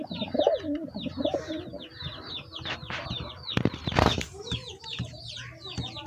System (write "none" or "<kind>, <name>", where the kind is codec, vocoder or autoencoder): vocoder, BigVGAN v2